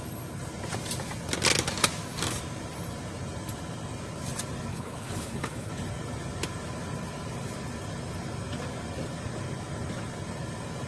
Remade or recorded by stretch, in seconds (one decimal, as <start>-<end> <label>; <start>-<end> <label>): 0.0-4.7 recorded; 4.7-5.7 remade; 5.7-10.9 recorded